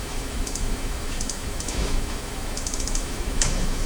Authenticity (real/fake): fake